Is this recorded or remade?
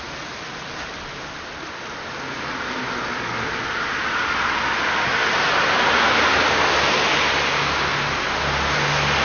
recorded